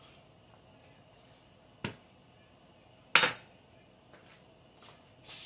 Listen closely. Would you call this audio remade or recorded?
recorded